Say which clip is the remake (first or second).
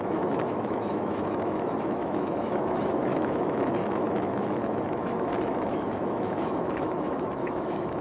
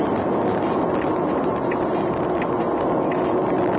first